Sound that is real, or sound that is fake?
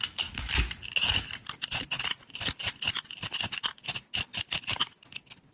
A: real